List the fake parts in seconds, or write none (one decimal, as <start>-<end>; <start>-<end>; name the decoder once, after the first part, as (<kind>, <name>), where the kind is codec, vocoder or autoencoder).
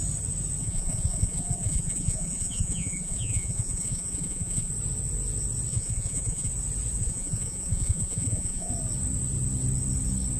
0.6-4.7 (vocoder, Vocos); 5.7-6.5; 7.0-8.7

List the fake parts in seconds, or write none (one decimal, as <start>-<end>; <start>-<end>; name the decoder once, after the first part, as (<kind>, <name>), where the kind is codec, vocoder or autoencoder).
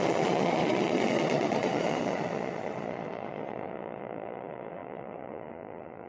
0.0-6.1 (vocoder, Vocos)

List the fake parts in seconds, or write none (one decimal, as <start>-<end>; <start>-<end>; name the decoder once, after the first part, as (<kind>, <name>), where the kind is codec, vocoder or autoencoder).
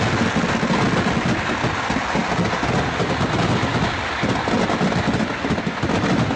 none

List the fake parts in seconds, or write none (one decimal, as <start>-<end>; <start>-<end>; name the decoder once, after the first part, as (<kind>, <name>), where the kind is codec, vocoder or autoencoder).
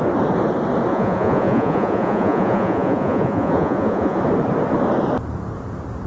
0.9-4.2 (vocoder, Vocos)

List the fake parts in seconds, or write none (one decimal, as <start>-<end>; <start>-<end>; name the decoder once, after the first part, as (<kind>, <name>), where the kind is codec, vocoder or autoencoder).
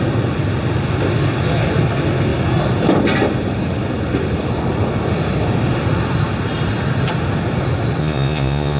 8.0-8.8 (vocoder, Vocos)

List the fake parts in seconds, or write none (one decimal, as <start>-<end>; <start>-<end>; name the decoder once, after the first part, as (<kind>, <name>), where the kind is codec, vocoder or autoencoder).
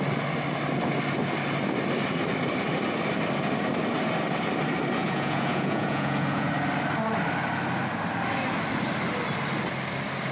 5.0-6.5 (vocoder, Vocos)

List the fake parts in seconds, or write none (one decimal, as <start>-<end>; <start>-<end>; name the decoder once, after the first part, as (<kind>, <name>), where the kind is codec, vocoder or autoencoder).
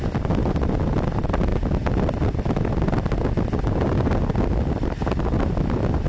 none